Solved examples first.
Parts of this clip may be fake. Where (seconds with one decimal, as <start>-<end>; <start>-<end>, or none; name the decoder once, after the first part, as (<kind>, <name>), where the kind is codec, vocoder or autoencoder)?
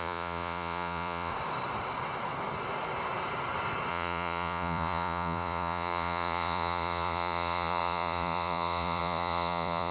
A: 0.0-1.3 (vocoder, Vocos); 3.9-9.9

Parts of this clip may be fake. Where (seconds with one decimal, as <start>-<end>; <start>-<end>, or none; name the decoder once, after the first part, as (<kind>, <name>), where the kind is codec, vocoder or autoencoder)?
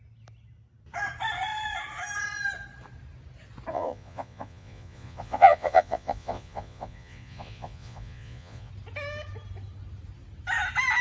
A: 3.7-8.7 (vocoder, Vocos)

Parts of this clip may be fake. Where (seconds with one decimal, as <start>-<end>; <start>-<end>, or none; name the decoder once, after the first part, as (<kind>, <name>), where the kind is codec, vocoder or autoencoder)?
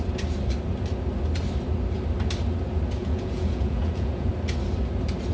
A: 3.0-4.3 (vocoder, Vocos)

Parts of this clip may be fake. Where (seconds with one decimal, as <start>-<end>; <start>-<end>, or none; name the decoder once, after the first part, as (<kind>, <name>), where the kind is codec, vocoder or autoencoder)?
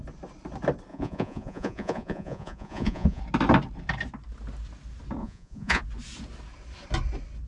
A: 0.9-3.2 (vocoder, Vocos); 5.2-5.8